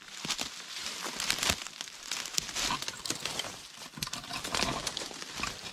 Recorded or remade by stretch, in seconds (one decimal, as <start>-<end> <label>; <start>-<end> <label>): 0.0-0.8 recorded; 0.8-1.8 remade; 1.8-5.7 recorded